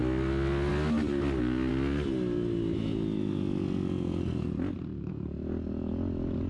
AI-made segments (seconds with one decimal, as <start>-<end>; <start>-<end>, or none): none